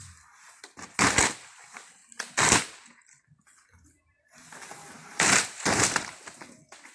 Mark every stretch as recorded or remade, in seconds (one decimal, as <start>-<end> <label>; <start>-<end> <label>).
0.0-6.9 recorded